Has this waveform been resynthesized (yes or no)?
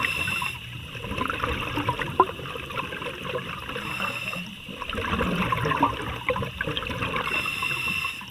no